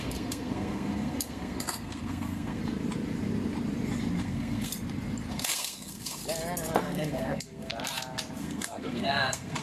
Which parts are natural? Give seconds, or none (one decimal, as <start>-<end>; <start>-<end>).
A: 2.6-4.2; 4.7-5.3; 6.2-6.8; 7.7-8.4